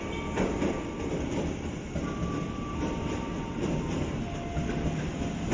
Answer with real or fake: real